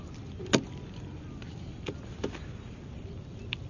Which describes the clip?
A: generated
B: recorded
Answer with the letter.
B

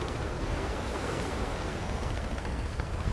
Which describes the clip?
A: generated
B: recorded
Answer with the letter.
A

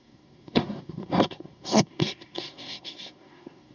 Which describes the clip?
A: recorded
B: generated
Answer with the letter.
B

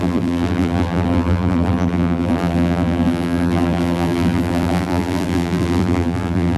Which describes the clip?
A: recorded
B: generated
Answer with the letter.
B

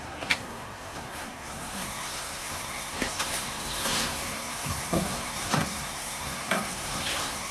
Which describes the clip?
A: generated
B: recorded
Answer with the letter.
A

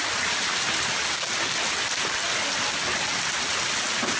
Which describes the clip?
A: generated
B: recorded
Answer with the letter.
B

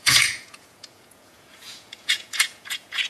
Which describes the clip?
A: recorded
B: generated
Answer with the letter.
B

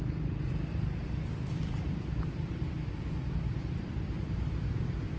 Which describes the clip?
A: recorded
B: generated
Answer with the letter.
B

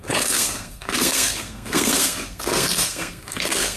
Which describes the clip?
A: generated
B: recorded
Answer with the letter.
A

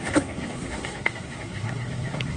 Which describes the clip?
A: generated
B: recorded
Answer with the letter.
A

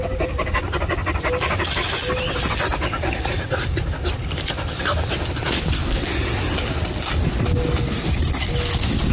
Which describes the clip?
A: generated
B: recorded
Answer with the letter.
B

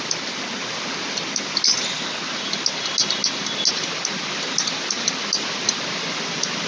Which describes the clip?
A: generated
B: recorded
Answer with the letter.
B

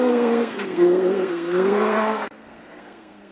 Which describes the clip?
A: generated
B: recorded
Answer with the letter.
A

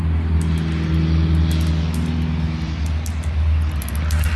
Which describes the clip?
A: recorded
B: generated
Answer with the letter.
A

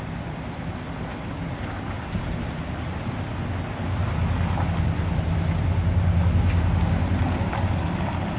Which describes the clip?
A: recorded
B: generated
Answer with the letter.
A